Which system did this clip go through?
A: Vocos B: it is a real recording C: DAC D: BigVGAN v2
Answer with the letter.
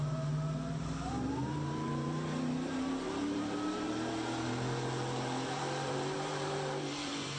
D